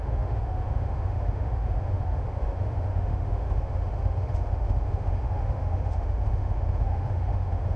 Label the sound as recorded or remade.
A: remade